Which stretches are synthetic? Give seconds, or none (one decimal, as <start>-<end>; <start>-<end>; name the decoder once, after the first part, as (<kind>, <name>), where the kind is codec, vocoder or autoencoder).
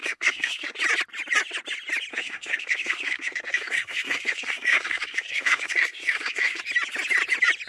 0.0-0.8 (codec, SNAC); 2.1-6.6